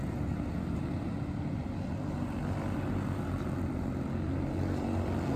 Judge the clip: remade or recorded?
recorded